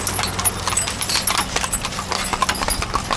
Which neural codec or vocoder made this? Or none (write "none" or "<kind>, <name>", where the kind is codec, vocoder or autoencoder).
none